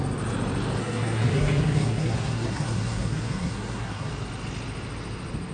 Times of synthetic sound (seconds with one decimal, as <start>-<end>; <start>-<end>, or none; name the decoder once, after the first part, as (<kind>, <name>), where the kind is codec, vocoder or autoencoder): 0.8-4.1 (codec, SNAC)